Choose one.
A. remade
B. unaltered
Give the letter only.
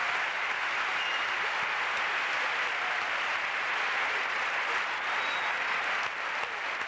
B